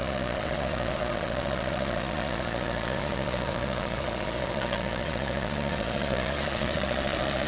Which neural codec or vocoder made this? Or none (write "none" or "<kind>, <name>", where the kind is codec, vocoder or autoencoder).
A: vocoder, Vocos